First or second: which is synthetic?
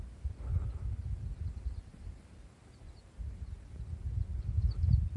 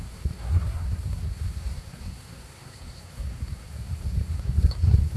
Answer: second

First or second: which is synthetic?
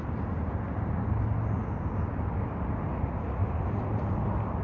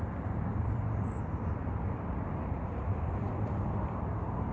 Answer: second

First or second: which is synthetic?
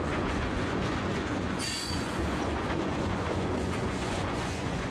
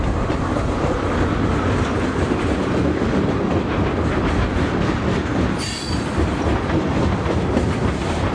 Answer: first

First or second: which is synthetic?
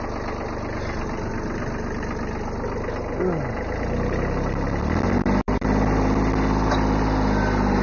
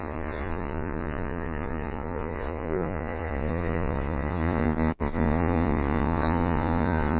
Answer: second